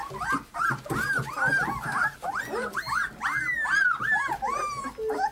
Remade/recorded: recorded